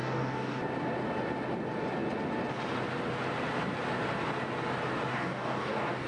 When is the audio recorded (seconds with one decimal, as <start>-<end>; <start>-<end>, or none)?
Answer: 0.6-5.1